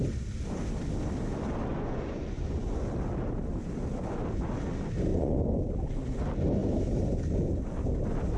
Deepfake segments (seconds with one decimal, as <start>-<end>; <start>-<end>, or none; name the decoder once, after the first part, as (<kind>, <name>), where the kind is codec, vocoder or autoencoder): 1.7-2.8 (vocoder, Vocos); 5.1-5.6